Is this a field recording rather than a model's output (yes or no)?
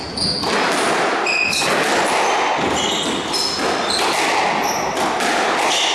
yes